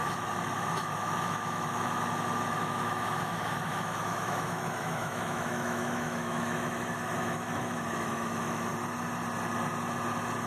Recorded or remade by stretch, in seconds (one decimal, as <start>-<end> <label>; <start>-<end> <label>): 0.0-8.7 remade; 8.7-10.5 recorded